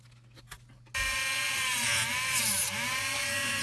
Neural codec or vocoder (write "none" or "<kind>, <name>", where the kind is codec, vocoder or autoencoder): none